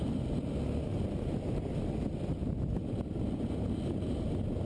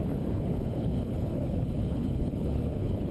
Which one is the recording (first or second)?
first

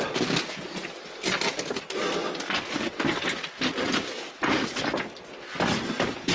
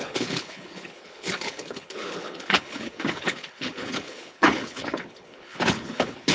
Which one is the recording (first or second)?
first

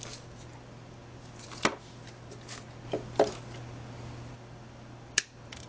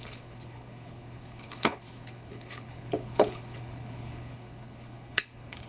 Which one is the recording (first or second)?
first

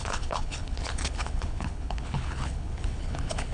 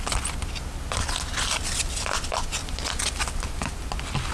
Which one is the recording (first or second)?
second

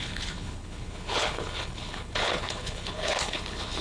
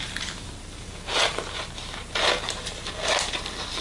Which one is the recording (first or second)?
second